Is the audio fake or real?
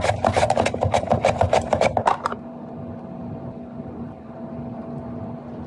real